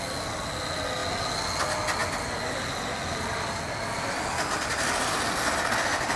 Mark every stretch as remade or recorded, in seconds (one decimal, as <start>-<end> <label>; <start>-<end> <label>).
0.0-6.2 recorded

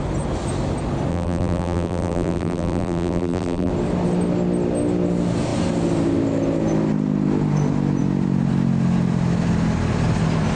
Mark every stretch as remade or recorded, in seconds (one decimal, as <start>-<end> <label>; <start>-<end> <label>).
0.0-1.1 recorded; 1.1-3.7 remade; 3.7-10.6 recorded

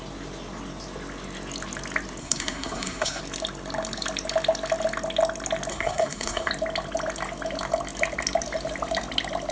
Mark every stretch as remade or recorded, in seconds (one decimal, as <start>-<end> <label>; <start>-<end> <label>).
0.0-2.2 recorded; 2.2-3.2 remade; 3.2-5.7 recorded; 5.7-6.5 remade; 6.5-9.5 recorded

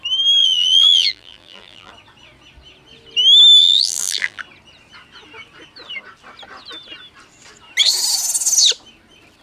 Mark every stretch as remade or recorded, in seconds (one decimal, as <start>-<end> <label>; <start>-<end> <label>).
0.0-0.4 recorded; 0.4-1.9 remade; 1.9-3.6 recorded; 3.6-4.4 remade; 4.4-9.4 recorded